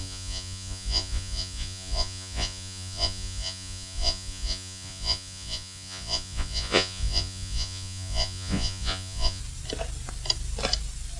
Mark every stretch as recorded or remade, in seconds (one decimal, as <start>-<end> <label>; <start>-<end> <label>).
0.0-9.4 remade; 9.4-11.2 recorded